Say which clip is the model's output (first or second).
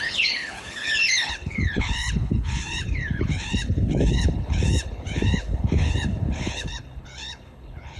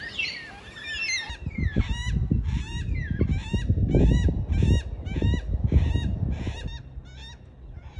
first